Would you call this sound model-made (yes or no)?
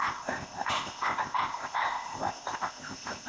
yes